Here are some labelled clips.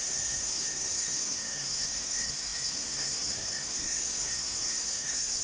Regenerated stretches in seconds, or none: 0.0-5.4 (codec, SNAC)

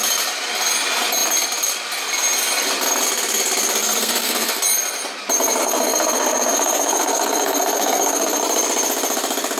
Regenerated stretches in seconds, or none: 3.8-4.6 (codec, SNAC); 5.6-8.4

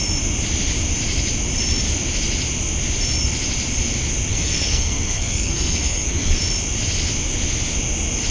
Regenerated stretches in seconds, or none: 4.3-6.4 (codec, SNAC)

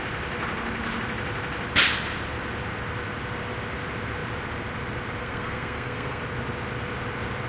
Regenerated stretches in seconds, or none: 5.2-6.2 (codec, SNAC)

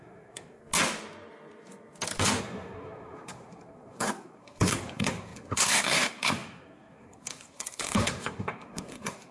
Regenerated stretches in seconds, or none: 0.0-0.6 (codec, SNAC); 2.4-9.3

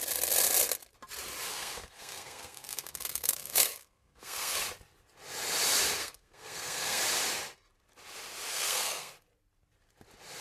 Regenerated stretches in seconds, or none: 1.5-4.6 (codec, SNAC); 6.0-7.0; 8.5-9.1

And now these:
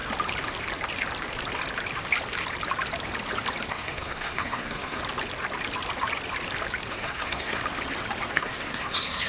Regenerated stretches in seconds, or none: 3.7-5.0 (codec, SNAC); 6.9-7.6; 8.3-9.3

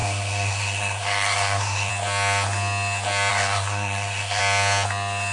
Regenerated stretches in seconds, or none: 0.0-1.9 (codec, SNAC); 3.3-4.4